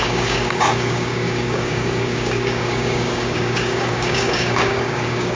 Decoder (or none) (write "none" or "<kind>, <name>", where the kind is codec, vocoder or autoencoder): codec, DAC